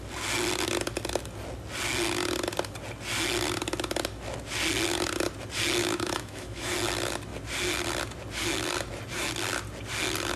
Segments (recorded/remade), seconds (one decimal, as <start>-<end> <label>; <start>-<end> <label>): 0.0-5.8 recorded; 5.8-6.7 remade; 6.7-10.4 recorded